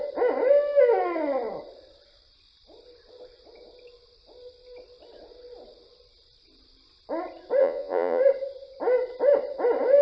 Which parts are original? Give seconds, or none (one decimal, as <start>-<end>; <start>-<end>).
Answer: 0.0-7.6; 8.2-10.0